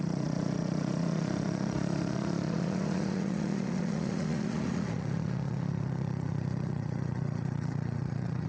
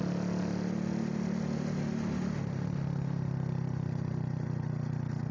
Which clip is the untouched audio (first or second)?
second